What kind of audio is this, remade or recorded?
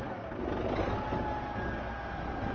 recorded